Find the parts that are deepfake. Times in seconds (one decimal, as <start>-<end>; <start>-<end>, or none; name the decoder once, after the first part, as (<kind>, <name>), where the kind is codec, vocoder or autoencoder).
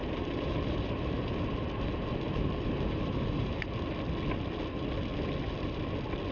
0.0-3.8 (vocoder, BigVGAN v2)